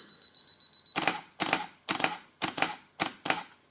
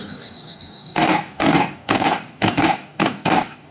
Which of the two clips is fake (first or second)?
second